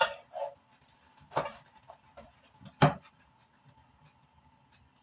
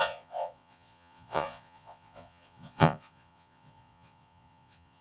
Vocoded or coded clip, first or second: second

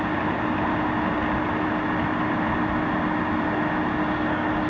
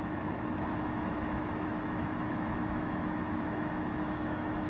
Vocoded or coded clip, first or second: second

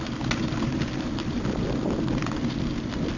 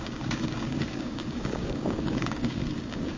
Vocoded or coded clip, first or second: second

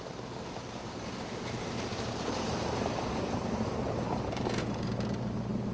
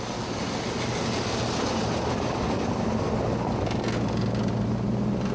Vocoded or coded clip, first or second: first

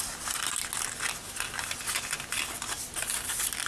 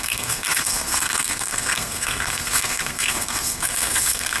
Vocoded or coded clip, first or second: second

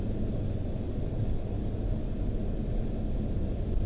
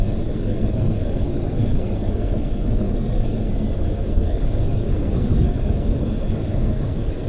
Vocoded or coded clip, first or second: second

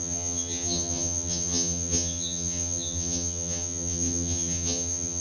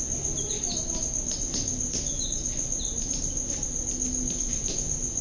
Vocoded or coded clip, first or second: first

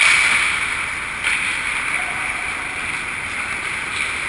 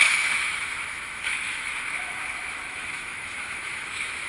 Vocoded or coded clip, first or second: second